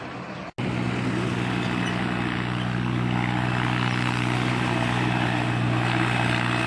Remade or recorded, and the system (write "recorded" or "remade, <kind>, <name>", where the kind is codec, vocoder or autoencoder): recorded